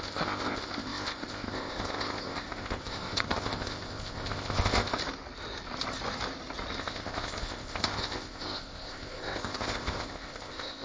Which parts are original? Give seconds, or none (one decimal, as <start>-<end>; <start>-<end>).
5.0-6.8